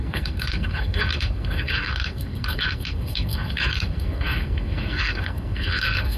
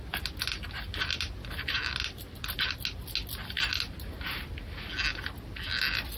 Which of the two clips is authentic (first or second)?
second